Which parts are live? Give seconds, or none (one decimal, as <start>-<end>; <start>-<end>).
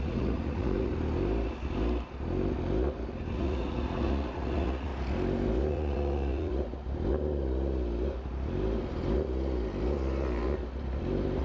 0.9-3.3; 4.9-5.7; 6.5-11.4